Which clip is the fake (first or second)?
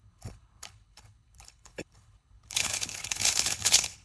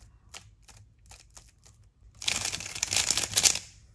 first